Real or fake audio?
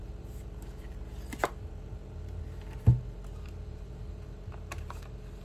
fake